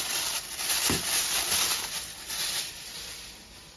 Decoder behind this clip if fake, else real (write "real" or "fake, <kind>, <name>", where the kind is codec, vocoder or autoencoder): real